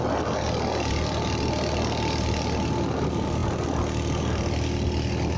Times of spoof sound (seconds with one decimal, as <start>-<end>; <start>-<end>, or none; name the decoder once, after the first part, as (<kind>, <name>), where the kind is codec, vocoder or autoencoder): none